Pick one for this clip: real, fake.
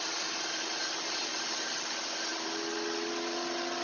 real